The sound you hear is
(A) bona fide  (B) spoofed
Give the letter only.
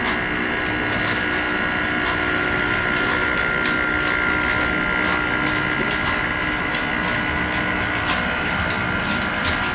A